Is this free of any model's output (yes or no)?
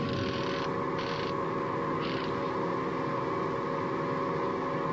yes